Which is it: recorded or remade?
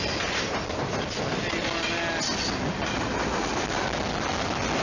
recorded